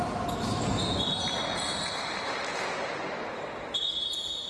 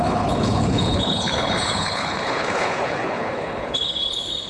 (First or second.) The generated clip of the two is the second